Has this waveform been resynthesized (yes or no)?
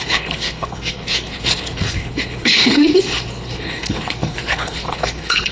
yes